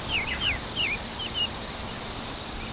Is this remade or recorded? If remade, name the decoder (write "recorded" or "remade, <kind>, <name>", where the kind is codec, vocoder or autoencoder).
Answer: remade, vocoder, BigVGAN v2